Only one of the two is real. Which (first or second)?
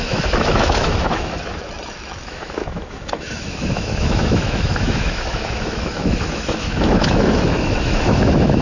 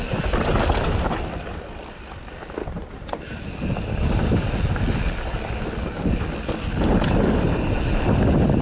second